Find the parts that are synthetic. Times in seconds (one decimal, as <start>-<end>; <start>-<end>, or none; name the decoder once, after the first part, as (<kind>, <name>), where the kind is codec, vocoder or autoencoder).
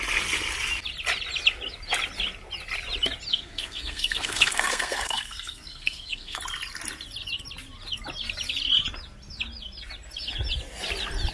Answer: 3.3-6.4 (codec, SNAC)